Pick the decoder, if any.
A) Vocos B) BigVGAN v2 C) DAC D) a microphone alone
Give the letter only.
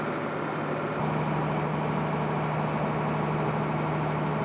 D